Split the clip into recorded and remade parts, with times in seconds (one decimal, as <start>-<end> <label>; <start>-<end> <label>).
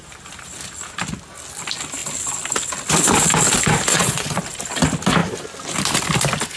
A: 0.0-3.9 recorded; 3.9-4.4 remade; 4.4-6.6 recorded